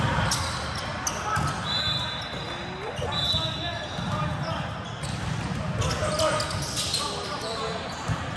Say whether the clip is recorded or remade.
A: recorded